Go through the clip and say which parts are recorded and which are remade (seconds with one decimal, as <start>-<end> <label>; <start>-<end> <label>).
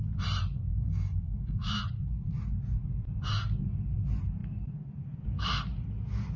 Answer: 0.0-0.7 recorded; 0.7-1.8 remade; 1.8-6.4 recorded